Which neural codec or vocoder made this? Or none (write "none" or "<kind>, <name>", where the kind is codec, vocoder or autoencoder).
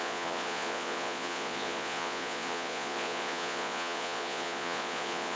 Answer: vocoder, Vocos